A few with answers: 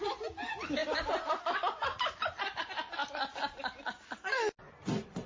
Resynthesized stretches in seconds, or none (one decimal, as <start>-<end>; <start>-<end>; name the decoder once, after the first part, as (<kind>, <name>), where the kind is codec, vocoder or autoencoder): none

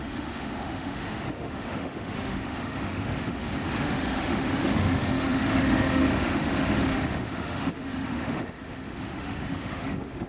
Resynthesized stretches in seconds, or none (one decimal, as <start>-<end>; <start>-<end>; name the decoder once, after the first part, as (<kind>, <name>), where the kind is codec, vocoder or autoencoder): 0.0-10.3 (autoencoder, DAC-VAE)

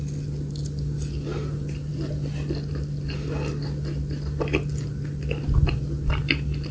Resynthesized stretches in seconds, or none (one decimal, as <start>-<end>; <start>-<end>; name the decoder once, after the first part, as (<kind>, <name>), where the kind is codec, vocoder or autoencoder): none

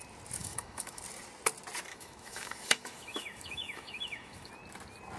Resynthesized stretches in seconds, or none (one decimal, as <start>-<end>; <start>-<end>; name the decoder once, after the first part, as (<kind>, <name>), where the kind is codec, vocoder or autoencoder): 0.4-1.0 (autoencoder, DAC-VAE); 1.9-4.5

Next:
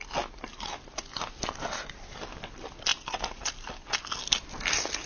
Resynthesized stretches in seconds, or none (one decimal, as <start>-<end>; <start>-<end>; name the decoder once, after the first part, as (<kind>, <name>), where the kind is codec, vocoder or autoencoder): none